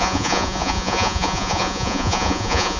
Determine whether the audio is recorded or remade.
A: remade